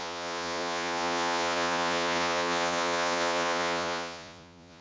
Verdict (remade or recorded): remade